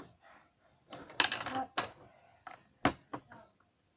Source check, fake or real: real